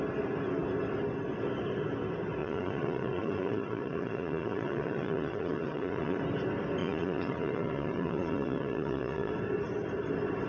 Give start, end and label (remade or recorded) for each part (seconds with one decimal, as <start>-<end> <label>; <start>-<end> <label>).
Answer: 0.0-2.4 recorded; 2.4-6.2 remade; 6.2-6.8 recorded; 6.8-9.3 remade; 9.3-10.5 recorded